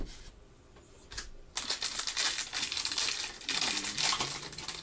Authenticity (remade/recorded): recorded